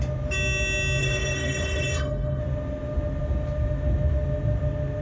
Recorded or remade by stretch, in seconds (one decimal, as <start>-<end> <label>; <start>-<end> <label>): 0.0-1.0 recorded; 1.0-2.4 remade; 2.4-5.0 recorded